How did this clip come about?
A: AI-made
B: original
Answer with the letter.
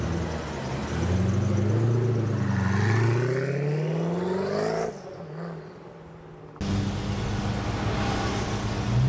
B